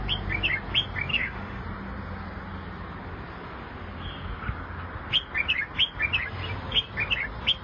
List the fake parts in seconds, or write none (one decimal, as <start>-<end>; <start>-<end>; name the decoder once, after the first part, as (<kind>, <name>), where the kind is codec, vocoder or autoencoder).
1.1-1.6 (autoencoder, DAC-VAE)